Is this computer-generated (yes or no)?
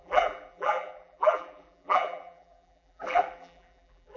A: yes